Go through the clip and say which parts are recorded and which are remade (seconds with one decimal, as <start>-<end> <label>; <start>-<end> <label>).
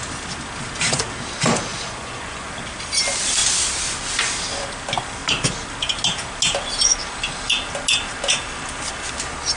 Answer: 0.0-1.7 recorded; 1.7-2.5 remade; 2.5-9.6 recorded